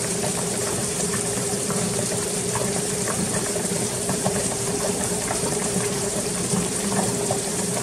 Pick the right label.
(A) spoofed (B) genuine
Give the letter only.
A